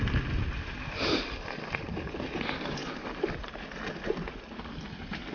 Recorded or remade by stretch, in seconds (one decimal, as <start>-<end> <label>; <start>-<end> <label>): 0.0-5.3 recorded